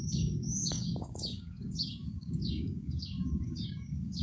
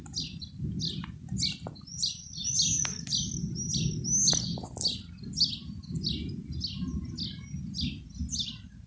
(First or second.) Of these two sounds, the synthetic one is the first